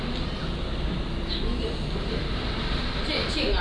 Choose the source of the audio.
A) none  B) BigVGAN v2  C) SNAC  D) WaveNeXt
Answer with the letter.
A